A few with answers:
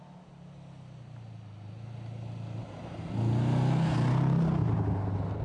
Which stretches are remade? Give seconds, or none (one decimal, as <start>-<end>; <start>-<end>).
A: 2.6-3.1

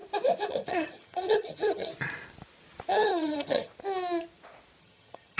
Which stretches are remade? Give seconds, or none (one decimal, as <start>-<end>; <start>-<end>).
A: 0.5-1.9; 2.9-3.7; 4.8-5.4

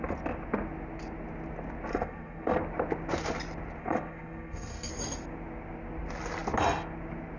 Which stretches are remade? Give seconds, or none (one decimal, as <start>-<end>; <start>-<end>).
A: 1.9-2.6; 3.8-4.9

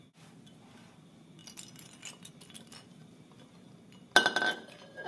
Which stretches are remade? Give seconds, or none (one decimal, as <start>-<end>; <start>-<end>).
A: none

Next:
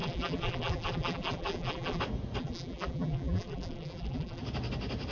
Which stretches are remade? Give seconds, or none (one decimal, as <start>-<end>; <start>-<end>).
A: 0.0-2.0; 2.4-4.4

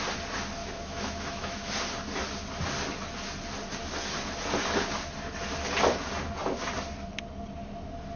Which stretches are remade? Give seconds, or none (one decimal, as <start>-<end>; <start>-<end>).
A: 0.6-1.7